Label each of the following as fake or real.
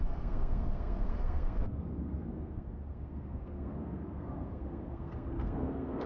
fake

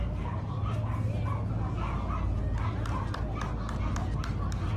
real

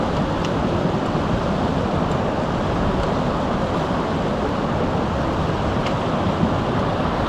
real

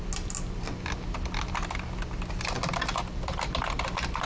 real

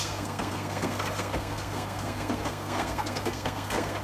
fake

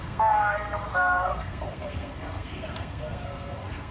fake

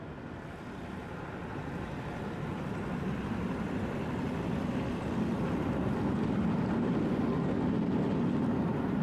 real